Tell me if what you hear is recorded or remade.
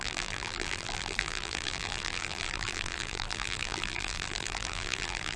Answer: remade